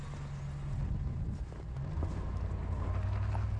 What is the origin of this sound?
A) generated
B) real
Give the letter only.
B